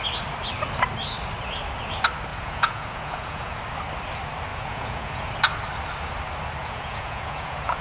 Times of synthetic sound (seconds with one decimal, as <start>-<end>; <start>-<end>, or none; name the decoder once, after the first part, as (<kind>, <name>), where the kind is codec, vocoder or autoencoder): 2.3-3.6 (vocoder, Vocos); 4.5-5.3; 6.6-7.8